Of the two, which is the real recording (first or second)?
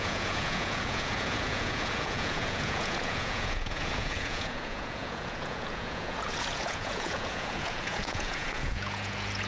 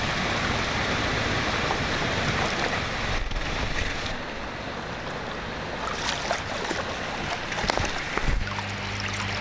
second